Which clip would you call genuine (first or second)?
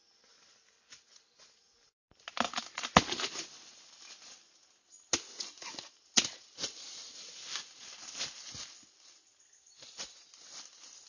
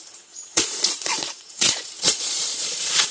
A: first